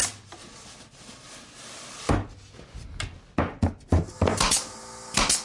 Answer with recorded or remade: recorded